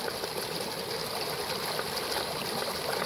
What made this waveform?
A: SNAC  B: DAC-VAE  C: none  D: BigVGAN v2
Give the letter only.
C